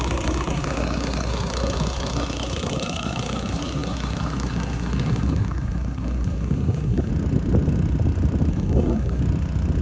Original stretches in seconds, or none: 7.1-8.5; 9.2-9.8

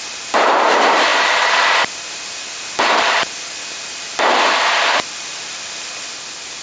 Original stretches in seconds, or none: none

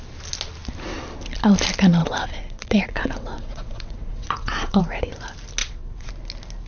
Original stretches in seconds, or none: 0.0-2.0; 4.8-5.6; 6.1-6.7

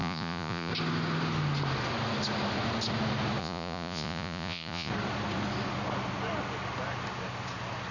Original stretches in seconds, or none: 0.7-3.4; 4.9-7.9